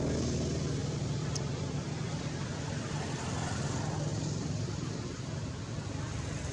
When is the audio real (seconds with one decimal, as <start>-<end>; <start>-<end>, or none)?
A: 0.0-6.5